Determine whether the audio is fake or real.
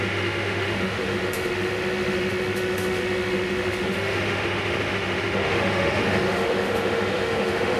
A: fake